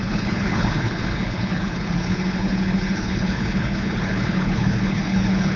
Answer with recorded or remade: remade